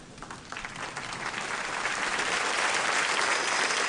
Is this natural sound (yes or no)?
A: no